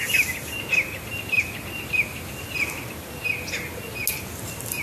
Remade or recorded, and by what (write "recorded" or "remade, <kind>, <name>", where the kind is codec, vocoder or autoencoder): recorded